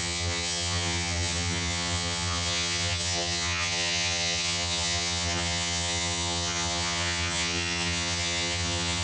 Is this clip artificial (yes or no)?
yes